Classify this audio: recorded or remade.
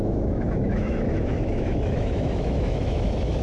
remade